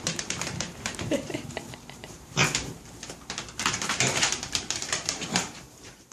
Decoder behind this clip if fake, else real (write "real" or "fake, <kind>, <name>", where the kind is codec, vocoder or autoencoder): fake, vocoder, BigVGAN v2